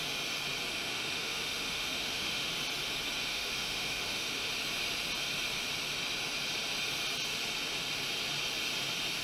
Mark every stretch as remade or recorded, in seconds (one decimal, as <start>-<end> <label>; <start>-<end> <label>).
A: 0.0-0.7 recorded; 0.7-2.5 remade; 2.5-3.3 recorded; 3.3-4.5 remade; 4.5-9.2 recorded